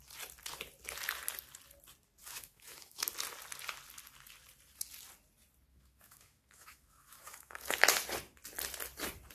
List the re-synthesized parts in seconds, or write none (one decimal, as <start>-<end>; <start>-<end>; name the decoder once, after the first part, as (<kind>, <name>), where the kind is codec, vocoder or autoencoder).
2.2-3.1 (autoencoder, DAC-VAE); 5.7-7.8